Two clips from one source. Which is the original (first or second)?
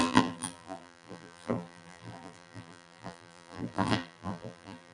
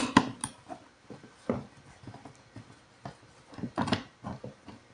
second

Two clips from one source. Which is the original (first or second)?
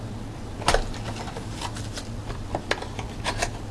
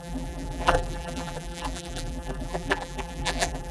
first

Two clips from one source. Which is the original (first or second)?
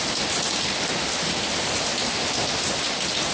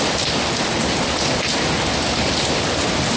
second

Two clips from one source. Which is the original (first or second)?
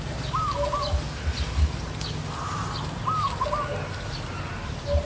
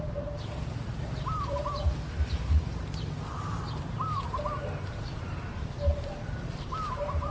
first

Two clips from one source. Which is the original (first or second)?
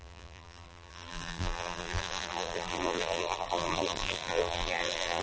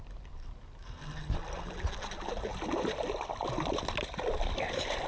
second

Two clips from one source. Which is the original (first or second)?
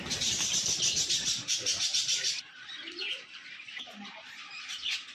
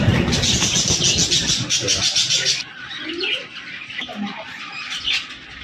second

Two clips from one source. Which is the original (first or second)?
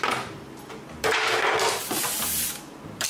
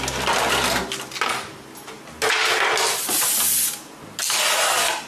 second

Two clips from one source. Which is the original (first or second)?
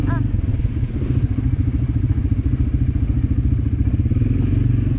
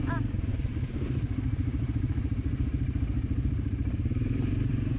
first